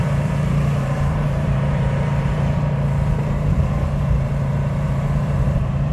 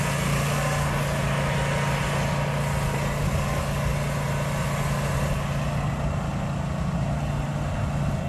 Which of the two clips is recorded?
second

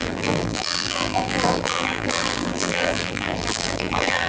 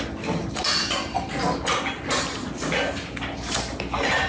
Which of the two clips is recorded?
second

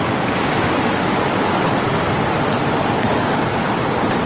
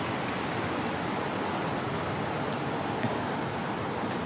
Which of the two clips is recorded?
second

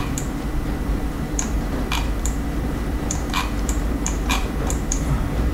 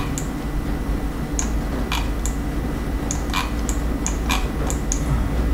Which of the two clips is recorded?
second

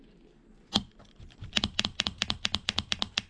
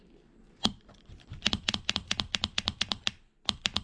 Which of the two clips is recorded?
first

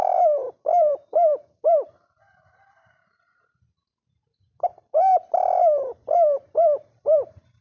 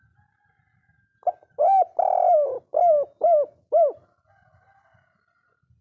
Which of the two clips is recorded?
second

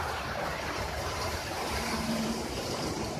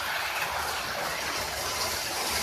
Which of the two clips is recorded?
second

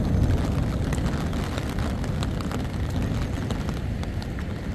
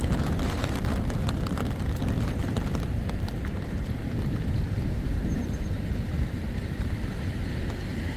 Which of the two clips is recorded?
first